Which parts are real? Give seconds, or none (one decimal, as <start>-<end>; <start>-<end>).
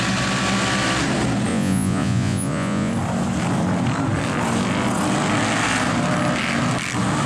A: 0.0-1.5; 2.9-7.3